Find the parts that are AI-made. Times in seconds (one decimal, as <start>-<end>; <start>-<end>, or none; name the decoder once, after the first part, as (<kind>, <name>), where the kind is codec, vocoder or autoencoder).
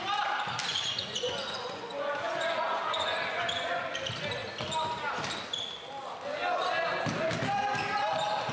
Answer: 0.7-3.8 (vocoder, Vocos)